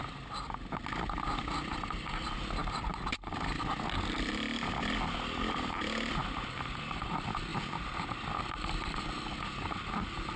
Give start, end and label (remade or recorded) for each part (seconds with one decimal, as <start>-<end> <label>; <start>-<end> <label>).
0.0-10.4 recorded